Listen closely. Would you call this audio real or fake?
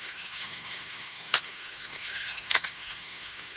fake